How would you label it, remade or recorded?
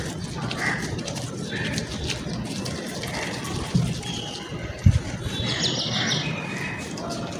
recorded